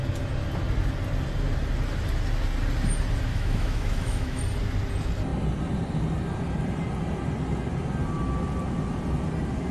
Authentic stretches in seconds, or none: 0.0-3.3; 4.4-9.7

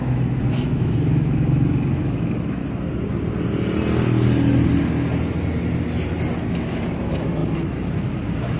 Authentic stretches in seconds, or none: 2.6-6.5